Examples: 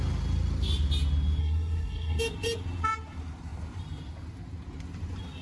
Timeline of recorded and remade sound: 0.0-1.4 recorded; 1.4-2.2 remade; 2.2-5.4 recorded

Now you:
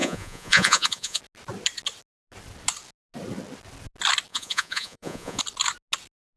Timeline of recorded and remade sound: 0.0-1.2 remade; 1.2-4.3 recorded; 4.3-5.4 remade; 5.4-6.4 recorded